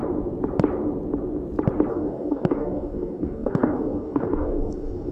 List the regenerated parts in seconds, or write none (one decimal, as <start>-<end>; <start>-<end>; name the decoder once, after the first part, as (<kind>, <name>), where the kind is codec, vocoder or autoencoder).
1.9-5.1 (codec, DAC)